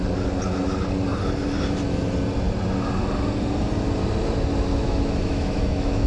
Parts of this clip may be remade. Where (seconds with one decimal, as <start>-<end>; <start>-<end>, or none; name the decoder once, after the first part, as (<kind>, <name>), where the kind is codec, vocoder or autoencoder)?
4.7-6.1 (autoencoder, DAC-VAE)